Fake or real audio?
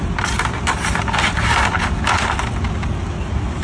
real